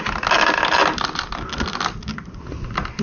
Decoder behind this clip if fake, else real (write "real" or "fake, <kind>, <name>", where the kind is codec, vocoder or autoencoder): real